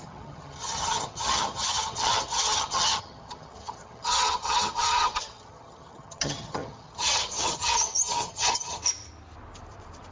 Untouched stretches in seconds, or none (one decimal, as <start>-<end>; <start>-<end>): 8.8-10.1